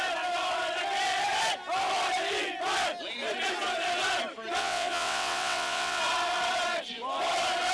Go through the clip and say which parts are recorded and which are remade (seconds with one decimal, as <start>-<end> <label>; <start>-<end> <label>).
0.0-4.6 recorded; 4.6-6.0 remade; 6.0-7.7 recorded